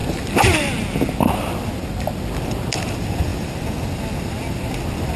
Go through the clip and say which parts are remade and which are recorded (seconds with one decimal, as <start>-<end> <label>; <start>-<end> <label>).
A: 0.0-5.2 recorded